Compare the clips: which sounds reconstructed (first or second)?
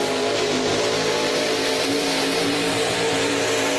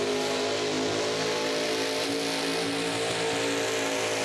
first